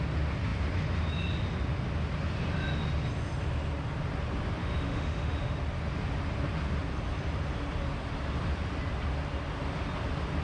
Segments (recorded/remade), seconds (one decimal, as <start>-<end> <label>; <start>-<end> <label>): 0.0-4.6 recorded; 4.6-5.6 remade; 5.6-10.4 recorded